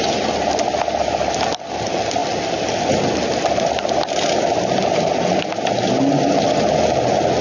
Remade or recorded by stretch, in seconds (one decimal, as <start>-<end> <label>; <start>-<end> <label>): 0.0-7.4 recorded